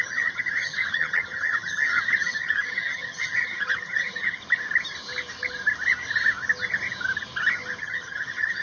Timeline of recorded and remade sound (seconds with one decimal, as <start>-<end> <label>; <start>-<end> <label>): 0.0-4.4 remade; 4.4-7.8 recorded; 7.8-8.6 remade